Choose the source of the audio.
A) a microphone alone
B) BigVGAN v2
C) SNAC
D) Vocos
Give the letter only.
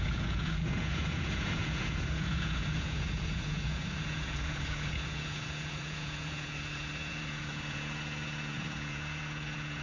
D